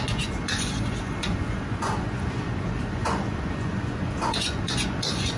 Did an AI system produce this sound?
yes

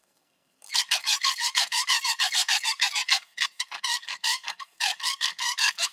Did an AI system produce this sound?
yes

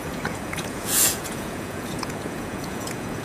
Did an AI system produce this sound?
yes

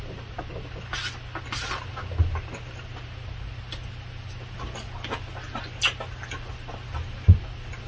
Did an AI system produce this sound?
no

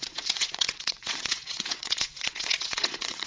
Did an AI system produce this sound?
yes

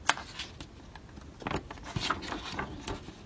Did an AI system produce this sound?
no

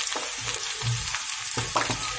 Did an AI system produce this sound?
no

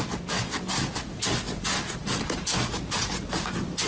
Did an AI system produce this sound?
no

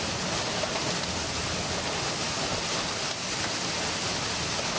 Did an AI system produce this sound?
no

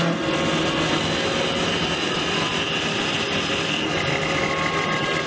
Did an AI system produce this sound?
no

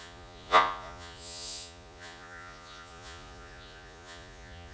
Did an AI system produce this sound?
yes